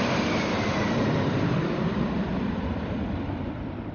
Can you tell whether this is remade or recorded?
recorded